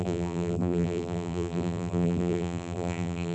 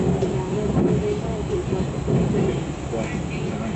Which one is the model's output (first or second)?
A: first